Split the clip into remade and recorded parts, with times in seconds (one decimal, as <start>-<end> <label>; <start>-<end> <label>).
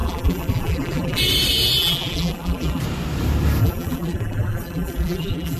0.0-1.2 remade; 1.2-1.8 recorded; 1.8-2.8 remade; 2.8-3.6 recorded; 3.6-5.6 remade